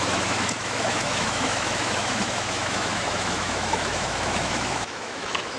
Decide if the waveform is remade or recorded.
remade